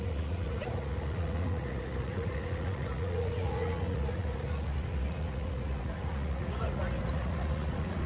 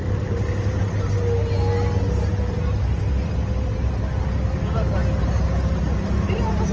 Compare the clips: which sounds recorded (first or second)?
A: second